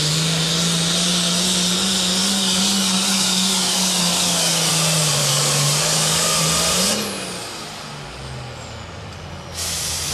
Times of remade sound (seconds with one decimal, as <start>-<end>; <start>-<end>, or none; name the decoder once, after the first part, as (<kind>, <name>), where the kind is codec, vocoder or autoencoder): 2.2-4.7 (codec, DAC); 5.2-6.4